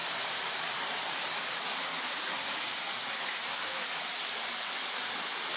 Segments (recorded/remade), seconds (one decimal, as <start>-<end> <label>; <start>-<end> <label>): 0.0-5.6 recorded